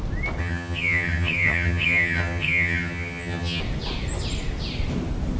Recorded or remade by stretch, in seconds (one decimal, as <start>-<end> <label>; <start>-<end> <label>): 0.0-0.4 recorded; 0.4-3.6 remade; 3.6-5.4 recorded